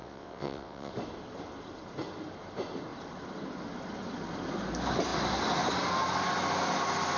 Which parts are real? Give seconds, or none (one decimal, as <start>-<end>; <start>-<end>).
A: 0.9-7.2

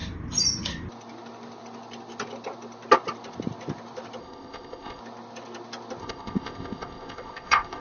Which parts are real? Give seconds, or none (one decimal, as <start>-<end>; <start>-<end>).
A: 0.0-4.2; 5.0-6.0

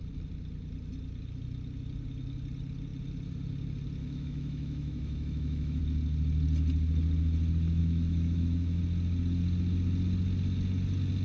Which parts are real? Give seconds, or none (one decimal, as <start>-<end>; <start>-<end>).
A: 0.0-4.0; 5.8-7.8; 8.8-11.2